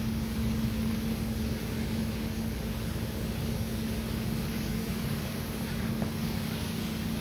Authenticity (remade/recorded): remade